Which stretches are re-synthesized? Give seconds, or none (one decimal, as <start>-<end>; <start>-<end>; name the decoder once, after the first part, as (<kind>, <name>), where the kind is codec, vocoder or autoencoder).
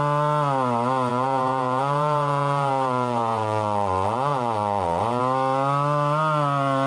1.1-5.2 (vocoder, Vocos)